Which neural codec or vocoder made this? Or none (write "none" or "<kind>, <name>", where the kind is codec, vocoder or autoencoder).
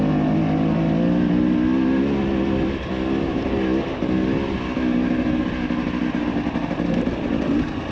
none